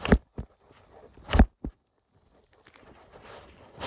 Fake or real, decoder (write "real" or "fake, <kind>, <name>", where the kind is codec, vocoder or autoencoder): real